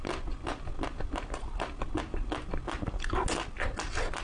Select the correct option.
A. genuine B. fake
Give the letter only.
A